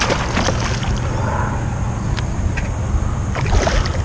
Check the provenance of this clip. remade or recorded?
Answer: recorded